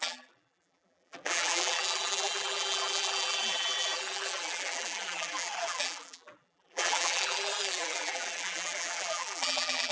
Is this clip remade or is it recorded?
remade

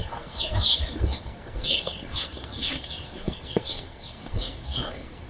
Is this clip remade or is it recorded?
remade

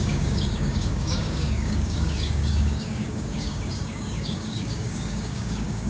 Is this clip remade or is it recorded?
remade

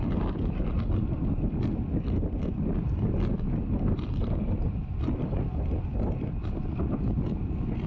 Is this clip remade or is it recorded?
recorded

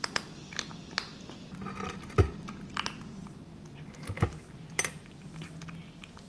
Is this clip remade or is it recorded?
recorded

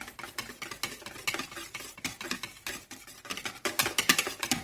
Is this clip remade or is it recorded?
recorded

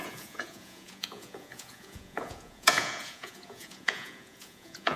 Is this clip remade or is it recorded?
remade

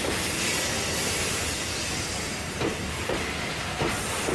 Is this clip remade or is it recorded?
recorded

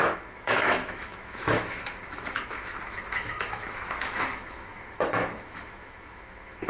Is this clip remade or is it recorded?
remade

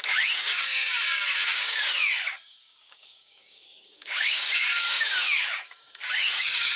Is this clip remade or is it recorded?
remade